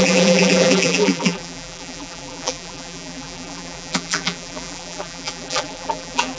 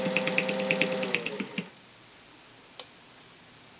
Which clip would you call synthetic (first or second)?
first